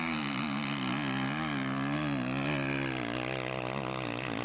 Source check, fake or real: real